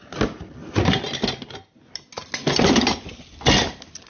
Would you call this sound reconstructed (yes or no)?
no